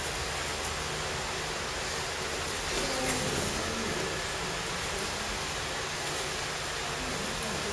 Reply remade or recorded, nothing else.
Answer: recorded